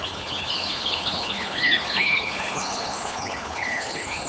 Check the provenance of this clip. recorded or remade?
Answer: remade